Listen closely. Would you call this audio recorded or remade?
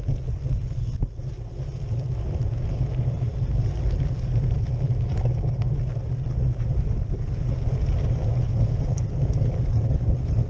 recorded